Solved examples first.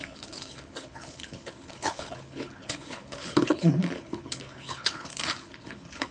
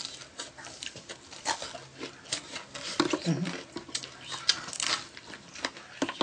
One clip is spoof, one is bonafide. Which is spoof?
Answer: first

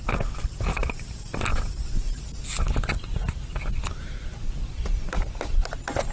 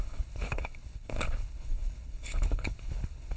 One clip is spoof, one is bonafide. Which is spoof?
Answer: second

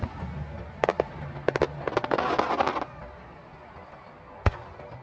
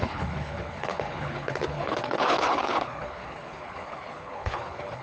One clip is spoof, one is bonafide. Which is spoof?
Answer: second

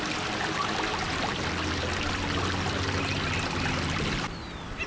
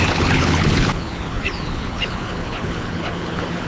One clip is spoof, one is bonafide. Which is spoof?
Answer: second